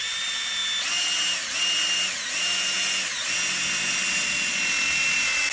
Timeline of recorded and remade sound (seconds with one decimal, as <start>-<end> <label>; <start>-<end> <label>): 0.0-5.5 recorded